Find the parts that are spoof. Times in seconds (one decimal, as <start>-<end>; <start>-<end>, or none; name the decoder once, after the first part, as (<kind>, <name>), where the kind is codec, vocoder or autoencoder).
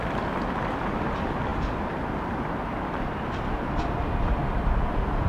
none